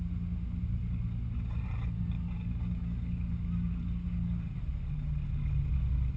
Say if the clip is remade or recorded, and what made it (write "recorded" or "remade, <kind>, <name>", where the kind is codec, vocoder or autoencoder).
recorded